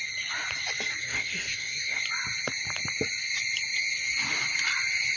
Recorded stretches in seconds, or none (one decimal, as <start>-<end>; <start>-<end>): 0.0-1.0; 2.0-5.2